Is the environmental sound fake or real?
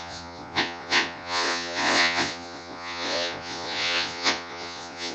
fake